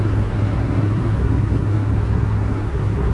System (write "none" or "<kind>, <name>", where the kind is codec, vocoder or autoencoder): codec, SNAC